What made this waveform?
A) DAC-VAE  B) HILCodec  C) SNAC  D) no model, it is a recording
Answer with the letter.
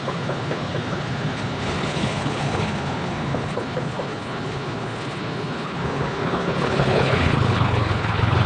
B